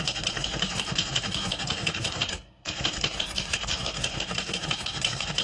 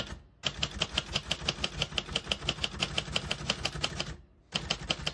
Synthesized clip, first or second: first